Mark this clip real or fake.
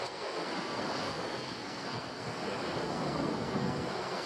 fake